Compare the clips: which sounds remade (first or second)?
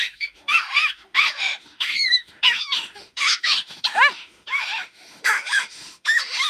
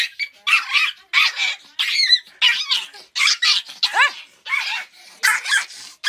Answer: first